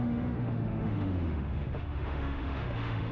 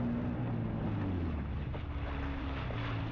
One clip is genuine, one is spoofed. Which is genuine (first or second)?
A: second